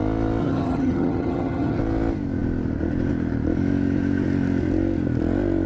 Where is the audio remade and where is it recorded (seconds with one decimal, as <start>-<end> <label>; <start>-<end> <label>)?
0.0-0.4 recorded; 0.4-1.8 remade; 1.8-5.7 recorded